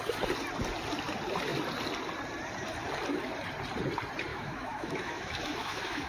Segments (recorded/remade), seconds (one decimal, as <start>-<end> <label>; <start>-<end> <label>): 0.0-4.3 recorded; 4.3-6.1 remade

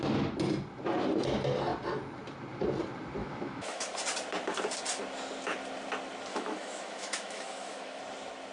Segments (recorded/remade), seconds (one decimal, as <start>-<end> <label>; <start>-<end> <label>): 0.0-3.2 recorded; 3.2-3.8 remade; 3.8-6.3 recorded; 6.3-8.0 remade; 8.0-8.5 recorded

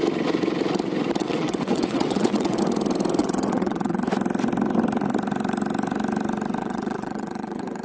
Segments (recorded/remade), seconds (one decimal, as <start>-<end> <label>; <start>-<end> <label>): 0.0-1.2 recorded; 1.2-2.6 remade; 2.6-3.2 recorded; 3.2-4.0 remade; 4.0-6.6 recorded; 6.6-7.8 remade